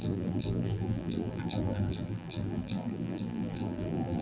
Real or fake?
fake